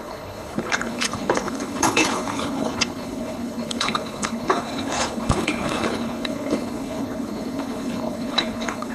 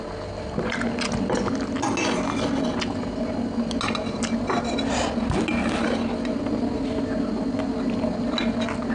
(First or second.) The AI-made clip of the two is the first